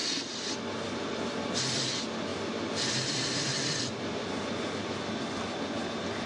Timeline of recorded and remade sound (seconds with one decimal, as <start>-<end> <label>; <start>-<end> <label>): 0.0-6.3 recorded